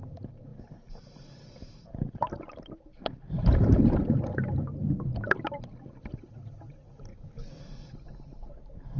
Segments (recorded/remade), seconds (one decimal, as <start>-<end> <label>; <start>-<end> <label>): 0.0-7.1 recorded; 7.1-7.6 remade; 7.6-9.0 recorded